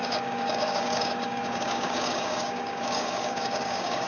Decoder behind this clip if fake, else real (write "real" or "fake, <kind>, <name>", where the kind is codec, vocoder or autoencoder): fake, codec, DAC